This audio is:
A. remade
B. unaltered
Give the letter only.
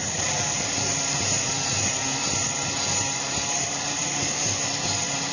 A